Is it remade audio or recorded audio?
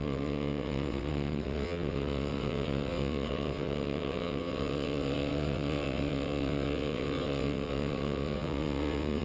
remade